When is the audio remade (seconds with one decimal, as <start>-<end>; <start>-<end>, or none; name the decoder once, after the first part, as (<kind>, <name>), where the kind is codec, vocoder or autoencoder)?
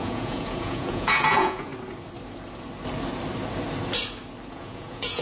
0.0-1.7 (vocoder, Vocos); 4.5-5.2